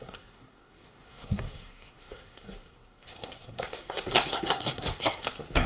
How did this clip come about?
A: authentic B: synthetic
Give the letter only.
B